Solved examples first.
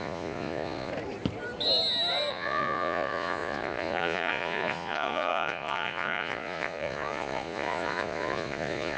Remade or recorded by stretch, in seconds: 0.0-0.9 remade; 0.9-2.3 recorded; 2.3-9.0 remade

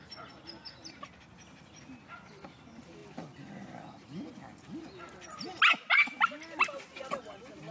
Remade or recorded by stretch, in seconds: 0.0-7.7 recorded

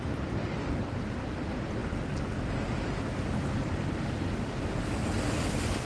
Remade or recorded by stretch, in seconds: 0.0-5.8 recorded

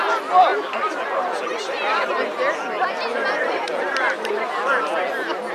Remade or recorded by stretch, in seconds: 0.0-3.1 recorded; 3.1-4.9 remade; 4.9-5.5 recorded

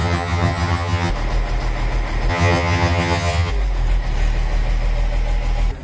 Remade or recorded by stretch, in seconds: 0.0-1.1 remade; 1.1-2.3 recorded; 2.3-3.5 remade; 3.5-5.8 recorded

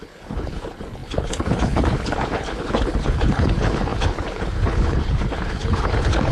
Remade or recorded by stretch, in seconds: 0.0-6.3 remade

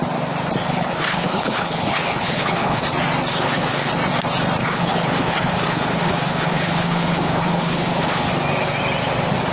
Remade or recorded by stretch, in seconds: 0.0-0.6 recorded; 0.6-2.8 remade; 2.8-3.3 recorded; 3.3-3.9 remade; 3.9-4.6 recorded; 4.6-8.3 remade; 8.3-9.5 recorded